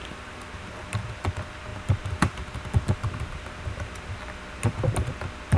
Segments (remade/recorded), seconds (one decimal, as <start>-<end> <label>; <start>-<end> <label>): 0.0-5.6 recorded